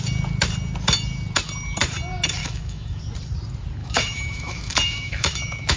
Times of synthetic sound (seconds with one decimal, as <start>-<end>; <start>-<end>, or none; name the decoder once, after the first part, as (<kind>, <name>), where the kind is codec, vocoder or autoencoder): 2.4-3.0 (autoencoder, DAC-VAE); 3.8-5.8